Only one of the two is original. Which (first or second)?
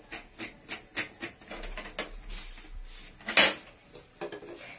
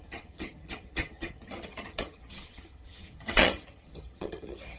first